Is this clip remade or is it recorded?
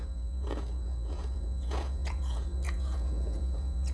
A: remade